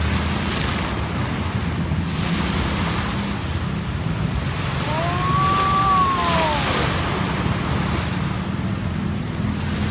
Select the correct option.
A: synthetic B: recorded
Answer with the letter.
B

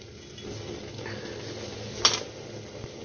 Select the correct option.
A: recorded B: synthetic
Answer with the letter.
A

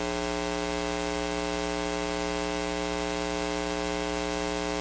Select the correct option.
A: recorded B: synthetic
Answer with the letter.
A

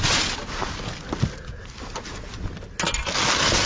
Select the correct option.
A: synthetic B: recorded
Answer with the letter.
B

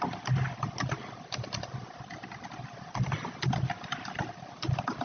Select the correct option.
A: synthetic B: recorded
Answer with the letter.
B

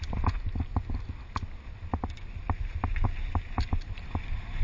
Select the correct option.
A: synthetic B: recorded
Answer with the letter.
B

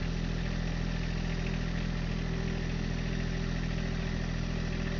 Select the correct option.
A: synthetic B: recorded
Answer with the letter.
B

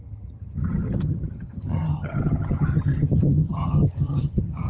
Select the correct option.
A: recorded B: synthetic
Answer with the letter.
B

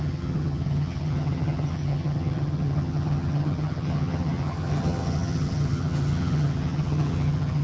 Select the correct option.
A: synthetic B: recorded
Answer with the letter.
A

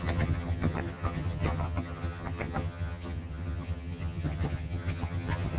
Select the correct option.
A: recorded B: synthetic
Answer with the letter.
B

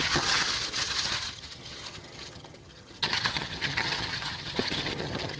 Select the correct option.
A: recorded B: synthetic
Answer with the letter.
B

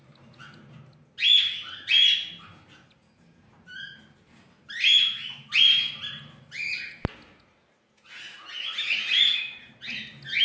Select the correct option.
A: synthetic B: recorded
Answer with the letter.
B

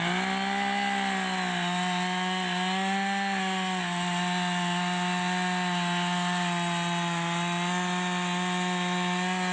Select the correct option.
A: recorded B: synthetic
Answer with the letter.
A